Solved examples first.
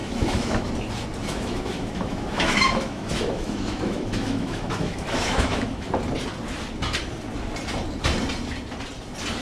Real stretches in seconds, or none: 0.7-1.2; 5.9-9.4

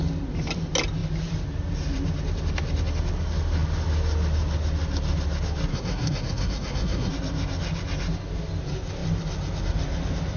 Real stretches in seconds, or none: 0.0-5.7; 7.1-10.4

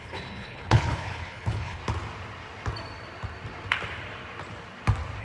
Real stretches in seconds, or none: 1.8-5.2

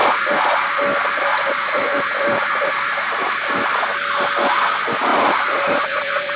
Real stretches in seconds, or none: 0.8-1.3; 2.9-5.1

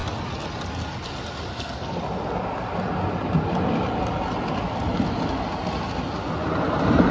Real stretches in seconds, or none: 0.0-1.5; 2.0-7.1

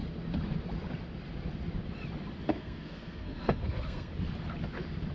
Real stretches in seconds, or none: 0.0-2.5; 4.1-5.1

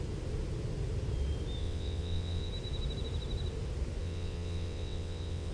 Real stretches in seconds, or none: 0.0-1.6; 2.5-4.0

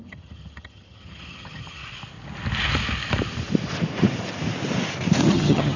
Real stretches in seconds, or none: 1.8-5.3